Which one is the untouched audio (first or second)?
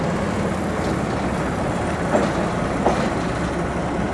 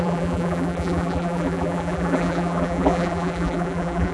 first